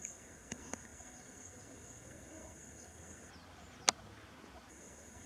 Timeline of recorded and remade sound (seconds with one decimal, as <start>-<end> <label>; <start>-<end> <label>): 0.0-3.3 remade; 3.3-4.7 recorded; 4.7-5.3 remade